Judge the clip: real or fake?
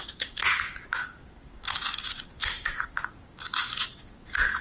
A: fake